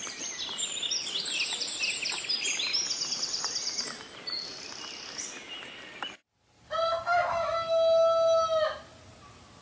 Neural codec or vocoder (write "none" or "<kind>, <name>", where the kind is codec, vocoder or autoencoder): none